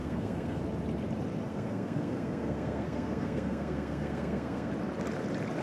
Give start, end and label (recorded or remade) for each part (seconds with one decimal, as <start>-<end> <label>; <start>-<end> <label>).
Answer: 0.0-0.6 remade; 0.6-1.5 recorded; 1.5-4.7 remade; 4.7-5.6 recorded